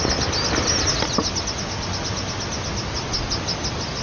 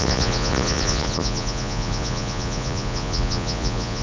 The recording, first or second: first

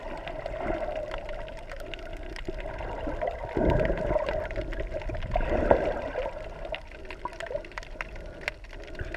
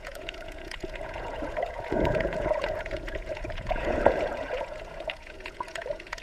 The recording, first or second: first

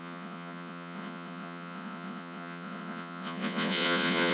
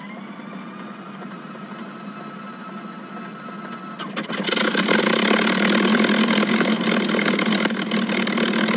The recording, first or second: second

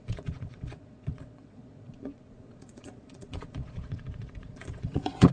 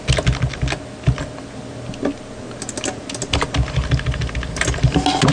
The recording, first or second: second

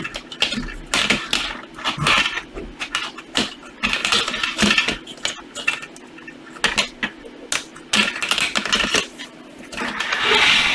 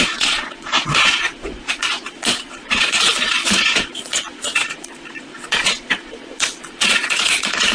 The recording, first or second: first